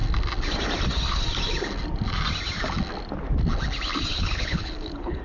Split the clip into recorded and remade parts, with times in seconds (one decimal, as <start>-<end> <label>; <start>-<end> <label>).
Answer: 0.0-4.1 recorded; 4.1-5.2 remade